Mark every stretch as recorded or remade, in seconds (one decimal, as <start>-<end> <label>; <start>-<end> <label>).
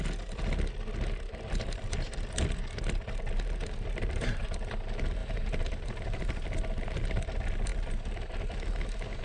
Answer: 0.0-3.6 recorded; 3.6-4.4 remade; 4.4-5.2 recorded; 5.2-6.2 remade; 6.2-9.2 recorded